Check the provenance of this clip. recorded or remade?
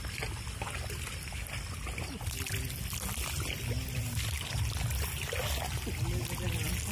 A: recorded